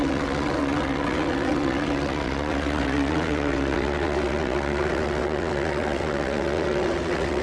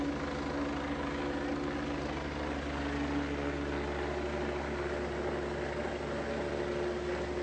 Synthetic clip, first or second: first